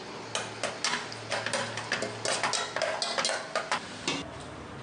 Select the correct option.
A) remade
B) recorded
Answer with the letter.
B